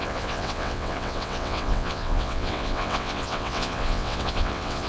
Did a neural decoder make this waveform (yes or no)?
yes